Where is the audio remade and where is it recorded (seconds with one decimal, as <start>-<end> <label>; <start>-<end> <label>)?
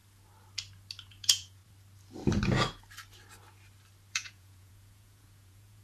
0.0-1.1 recorded; 1.1-1.6 remade; 1.6-4.1 recorded; 4.1-5.8 remade